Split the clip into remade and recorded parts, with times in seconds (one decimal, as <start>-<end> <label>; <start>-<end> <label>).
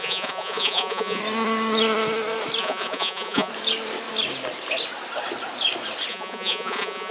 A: 0.0-1.2 remade; 1.2-2.6 recorded; 2.6-3.5 remade; 3.5-6.1 recorded; 6.1-7.1 remade